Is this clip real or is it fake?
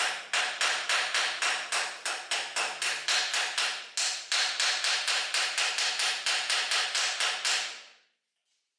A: real